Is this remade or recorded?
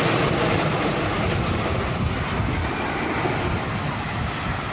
recorded